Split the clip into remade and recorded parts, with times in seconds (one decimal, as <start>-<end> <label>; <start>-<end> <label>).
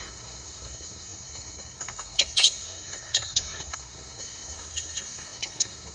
0.0-5.9 remade